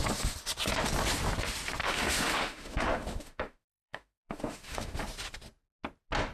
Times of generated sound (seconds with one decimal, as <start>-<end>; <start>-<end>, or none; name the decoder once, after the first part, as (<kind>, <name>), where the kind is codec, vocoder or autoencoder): 1.8-5.0 (autoencoder, DAC-VAE)